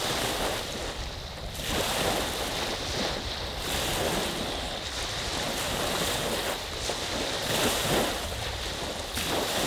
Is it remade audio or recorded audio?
recorded